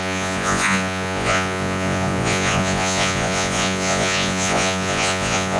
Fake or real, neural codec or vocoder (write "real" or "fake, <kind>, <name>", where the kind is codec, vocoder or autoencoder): fake, vocoder, Vocos